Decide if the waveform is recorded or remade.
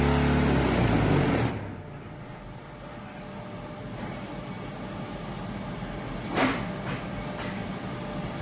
recorded